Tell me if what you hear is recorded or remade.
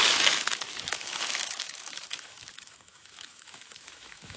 remade